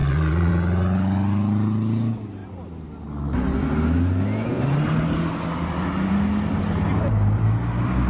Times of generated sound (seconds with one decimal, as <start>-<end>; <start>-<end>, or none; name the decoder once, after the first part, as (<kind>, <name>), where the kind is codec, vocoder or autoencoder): 0.0-0.5 (vocoder, Vocos)